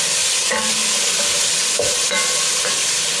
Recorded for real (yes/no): yes